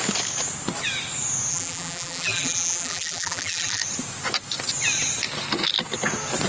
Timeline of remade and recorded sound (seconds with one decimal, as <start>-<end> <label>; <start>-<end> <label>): 0.0-1.5 recorded; 1.5-3.8 remade; 3.8-6.5 recorded